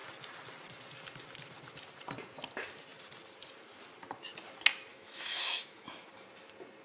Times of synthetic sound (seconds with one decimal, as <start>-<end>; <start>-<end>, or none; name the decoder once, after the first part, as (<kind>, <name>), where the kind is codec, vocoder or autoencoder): 4.9-6.1 (autoencoder, DAC-VAE)